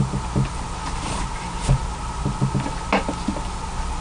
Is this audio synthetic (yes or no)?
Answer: no